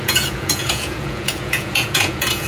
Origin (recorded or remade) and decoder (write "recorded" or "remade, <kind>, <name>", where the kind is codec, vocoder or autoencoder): remade, vocoder, Vocos